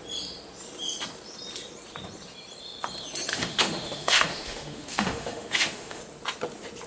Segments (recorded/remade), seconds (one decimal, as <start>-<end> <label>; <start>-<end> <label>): 0.0-3.3 recorded; 3.3-6.0 remade; 6.0-6.9 recorded